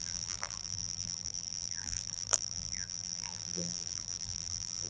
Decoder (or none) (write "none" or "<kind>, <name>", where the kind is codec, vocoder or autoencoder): vocoder, BigVGAN v2